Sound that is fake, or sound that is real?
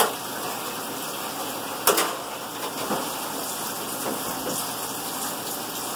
real